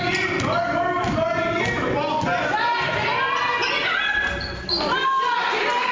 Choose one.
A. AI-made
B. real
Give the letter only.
B